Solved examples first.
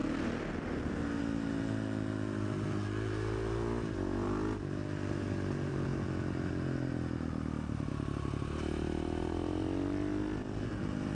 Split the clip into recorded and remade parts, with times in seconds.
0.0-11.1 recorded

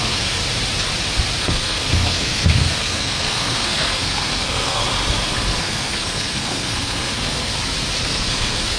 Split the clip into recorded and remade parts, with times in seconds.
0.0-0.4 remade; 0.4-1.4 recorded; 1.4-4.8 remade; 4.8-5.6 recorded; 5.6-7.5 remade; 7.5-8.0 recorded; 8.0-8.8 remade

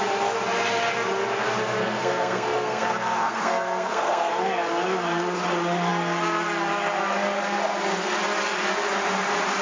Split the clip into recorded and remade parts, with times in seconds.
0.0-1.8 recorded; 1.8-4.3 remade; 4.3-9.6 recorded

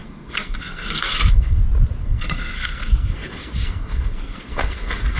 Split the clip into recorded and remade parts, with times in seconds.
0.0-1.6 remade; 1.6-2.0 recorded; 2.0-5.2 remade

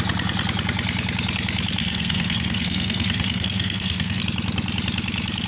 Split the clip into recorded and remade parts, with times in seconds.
0.0-1.8 recorded; 1.8-4.2 remade; 4.2-5.5 recorded

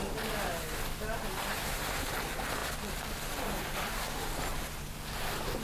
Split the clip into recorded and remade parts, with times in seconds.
0.0-5.6 recorded

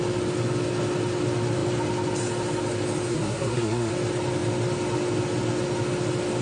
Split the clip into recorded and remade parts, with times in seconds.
0.0-3.1 recorded; 3.1-3.9 remade; 3.9-6.4 recorded

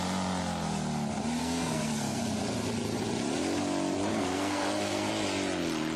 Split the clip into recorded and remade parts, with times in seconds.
0.0-1.4 recorded; 1.4-2.2 remade; 2.2-4.1 recorded; 4.1-5.1 remade; 5.1-6.0 recorded